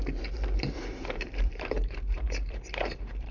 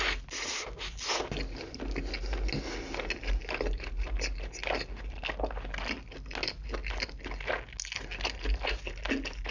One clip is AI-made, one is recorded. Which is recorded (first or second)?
second